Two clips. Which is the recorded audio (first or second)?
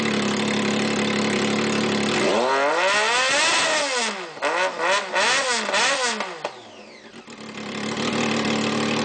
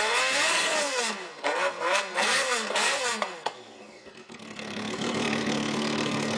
first